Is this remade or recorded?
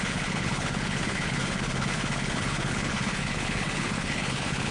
remade